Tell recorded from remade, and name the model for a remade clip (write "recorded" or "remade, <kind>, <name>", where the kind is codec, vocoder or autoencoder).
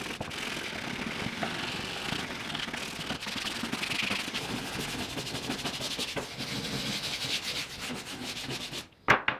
recorded